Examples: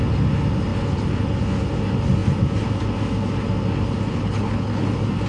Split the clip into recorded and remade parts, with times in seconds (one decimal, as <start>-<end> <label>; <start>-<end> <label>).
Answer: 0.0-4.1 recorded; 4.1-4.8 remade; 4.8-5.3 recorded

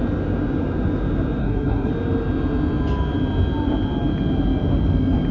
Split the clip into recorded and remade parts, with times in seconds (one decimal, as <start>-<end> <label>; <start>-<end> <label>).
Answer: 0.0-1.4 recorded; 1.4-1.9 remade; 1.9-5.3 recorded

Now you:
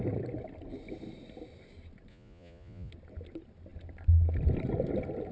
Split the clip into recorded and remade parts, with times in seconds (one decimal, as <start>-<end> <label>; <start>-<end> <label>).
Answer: 0.0-2.1 recorded; 2.1-2.9 remade; 2.9-5.3 recorded

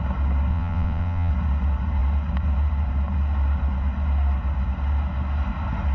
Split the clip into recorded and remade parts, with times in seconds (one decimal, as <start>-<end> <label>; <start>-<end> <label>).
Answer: 0.0-0.5 recorded; 0.5-1.3 remade; 1.3-5.9 recorded

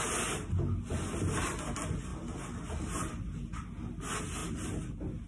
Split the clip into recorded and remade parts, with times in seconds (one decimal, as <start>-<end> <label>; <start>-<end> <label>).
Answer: 0.0-5.3 recorded

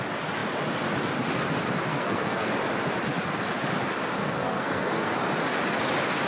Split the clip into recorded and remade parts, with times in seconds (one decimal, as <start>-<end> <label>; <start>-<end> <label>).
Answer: 0.0-1.9 recorded; 1.9-2.5 remade; 2.5-4.2 recorded; 4.2-5.2 remade; 5.2-6.3 recorded

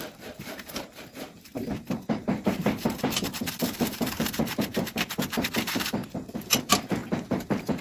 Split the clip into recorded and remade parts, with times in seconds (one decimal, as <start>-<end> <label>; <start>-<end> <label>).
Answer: 0.0-7.8 remade

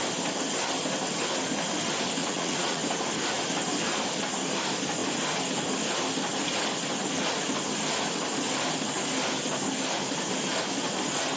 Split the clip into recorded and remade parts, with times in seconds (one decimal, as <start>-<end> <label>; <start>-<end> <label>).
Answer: 0.0-2.2 recorded; 2.2-2.8 remade; 2.8-11.4 recorded